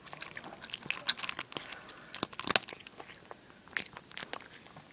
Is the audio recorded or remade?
recorded